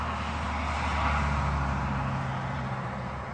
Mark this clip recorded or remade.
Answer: recorded